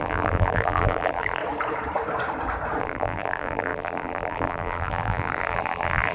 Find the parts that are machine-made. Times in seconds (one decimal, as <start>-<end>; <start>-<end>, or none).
0.0-1.4; 2.8-6.1